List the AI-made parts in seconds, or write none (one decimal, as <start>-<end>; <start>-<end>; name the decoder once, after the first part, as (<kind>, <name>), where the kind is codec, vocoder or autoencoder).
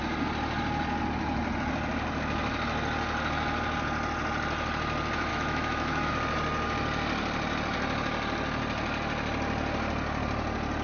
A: 5.3-6.1 (autoencoder, DAC-VAE)